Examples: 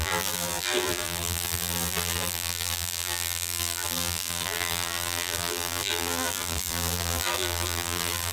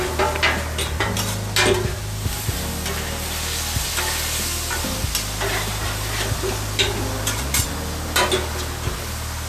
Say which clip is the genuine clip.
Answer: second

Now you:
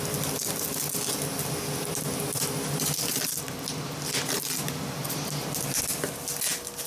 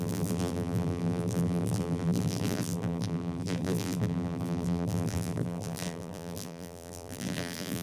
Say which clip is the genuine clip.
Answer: first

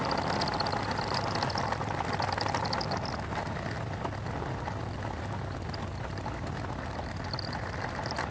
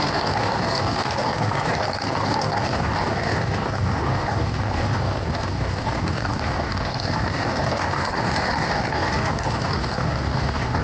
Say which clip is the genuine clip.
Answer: first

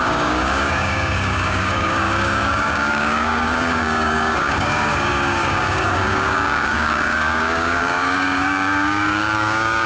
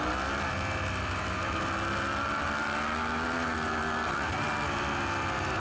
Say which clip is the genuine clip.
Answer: second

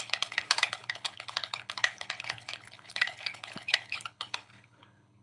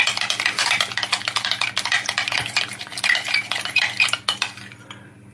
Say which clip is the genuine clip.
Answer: second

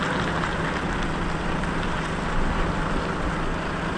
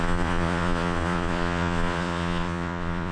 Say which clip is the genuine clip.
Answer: first